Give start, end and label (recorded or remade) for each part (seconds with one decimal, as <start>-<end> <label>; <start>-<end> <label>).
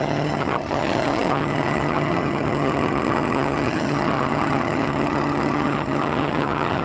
0.0-6.8 remade